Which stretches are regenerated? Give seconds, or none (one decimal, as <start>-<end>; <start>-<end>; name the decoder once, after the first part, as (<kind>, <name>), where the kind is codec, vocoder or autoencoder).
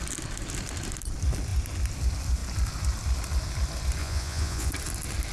4.0-4.7 (vocoder, Vocos)